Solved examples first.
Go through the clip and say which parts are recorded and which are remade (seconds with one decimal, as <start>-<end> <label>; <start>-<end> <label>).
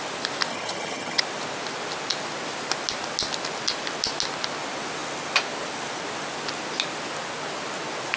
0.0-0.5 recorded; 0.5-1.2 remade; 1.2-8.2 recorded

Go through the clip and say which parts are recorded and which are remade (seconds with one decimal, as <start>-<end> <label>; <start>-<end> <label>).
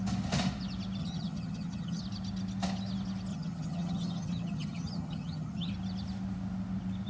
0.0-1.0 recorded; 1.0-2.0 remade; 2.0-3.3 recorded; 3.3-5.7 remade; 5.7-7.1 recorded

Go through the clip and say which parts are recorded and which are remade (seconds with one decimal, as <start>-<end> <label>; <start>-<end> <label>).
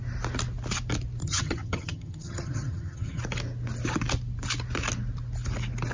0.0-1.2 recorded; 1.2-3.2 remade; 3.2-5.9 recorded